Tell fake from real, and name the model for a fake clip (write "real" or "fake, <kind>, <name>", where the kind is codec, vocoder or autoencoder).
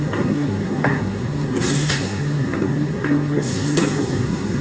fake, codec, SNAC